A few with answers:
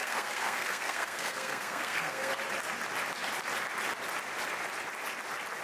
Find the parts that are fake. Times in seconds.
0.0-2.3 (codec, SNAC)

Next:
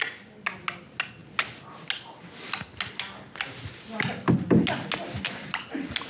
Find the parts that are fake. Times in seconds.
none

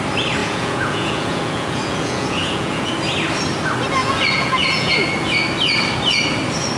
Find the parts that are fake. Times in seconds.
0.4-2.9 (vocoder, Vocos); 4.0-4.9